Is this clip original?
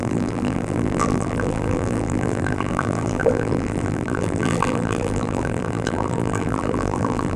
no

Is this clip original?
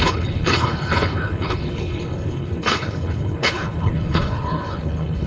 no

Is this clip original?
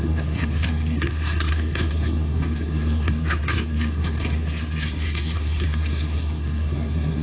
no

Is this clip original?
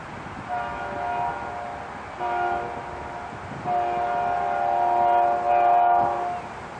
yes